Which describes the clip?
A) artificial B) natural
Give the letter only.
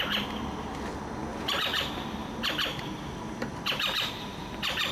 B